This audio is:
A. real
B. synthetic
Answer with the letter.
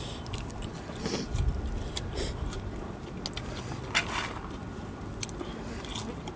A